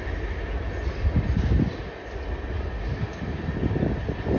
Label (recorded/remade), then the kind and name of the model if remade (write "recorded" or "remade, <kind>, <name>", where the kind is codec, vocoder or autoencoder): recorded